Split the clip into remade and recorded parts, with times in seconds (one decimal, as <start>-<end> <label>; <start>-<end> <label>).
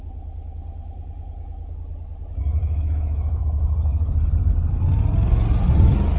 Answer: 0.0-2.6 recorded; 2.6-3.4 remade; 3.4-6.2 recorded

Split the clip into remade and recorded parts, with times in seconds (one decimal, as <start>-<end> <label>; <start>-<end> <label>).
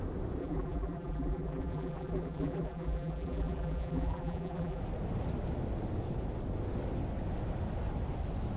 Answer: 0.0-0.4 recorded; 0.4-4.8 remade; 4.8-8.6 recorded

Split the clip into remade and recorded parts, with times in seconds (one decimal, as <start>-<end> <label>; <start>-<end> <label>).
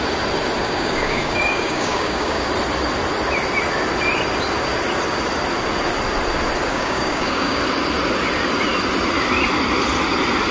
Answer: 0.0-0.6 recorded; 0.6-2.5 remade; 2.5-6.7 recorded; 6.7-7.6 remade; 7.6-10.5 recorded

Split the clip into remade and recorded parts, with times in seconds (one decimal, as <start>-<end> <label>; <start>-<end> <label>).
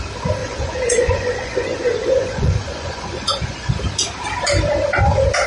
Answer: 0.0-0.4 recorded; 0.4-3.7 remade; 3.7-5.5 recorded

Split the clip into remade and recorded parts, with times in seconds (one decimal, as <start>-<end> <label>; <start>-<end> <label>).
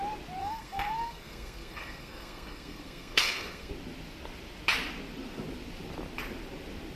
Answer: 0.0-0.4 recorded; 0.4-3.7 remade; 3.7-7.0 recorded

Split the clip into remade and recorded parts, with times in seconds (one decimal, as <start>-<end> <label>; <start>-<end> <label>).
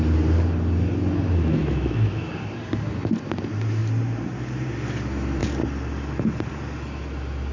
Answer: 0.0-1.6 recorded; 1.6-2.3 remade; 2.3-7.5 recorded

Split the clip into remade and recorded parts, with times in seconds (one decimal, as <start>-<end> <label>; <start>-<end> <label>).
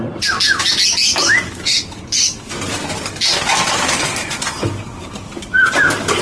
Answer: 0.0-1.1 recorded; 1.1-2.5 remade; 2.5-4.6 recorded; 4.6-6.2 remade